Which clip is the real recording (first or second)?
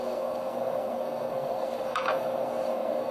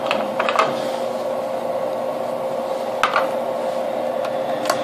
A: second